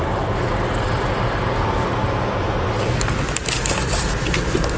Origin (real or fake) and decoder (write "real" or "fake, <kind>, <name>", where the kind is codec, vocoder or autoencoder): real